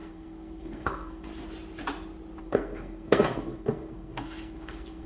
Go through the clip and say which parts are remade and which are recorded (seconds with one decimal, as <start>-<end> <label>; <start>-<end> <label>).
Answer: 0.0-1.3 remade; 1.3-2.4 recorded; 2.4-5.1 remade